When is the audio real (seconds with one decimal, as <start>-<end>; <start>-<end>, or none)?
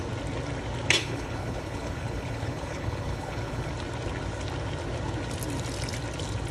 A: 0.0-1.0; 3.7-6.5